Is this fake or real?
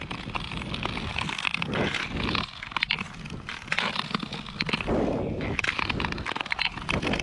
real